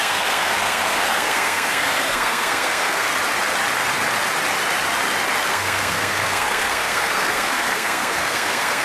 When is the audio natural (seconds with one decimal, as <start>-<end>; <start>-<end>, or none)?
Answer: 3.1-5.5